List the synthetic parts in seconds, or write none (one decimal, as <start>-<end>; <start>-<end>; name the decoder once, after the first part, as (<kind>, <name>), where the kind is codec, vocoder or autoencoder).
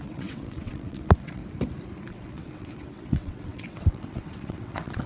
0.0-1.4 (vocoder, WaveNeXt); 2.1-5.1